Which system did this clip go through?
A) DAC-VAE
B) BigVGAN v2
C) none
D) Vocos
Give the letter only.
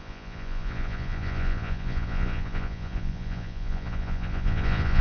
D